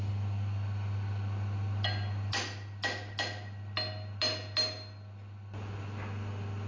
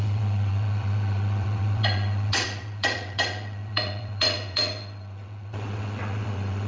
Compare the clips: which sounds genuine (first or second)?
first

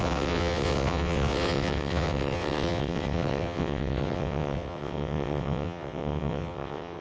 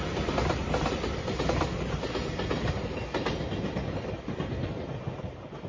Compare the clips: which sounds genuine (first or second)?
second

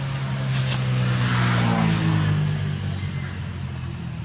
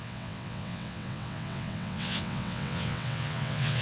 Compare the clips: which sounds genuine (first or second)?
first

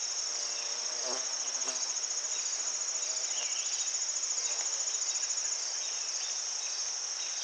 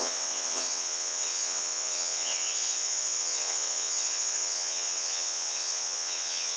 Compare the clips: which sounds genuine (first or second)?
first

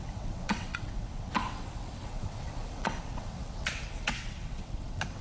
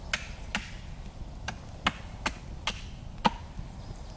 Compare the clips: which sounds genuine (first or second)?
second